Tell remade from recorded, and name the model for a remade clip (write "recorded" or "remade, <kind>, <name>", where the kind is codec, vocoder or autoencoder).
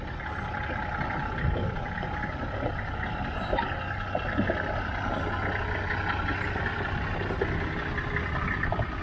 recorded